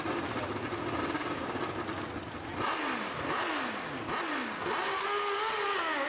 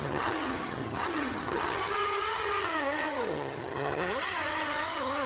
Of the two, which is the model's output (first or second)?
second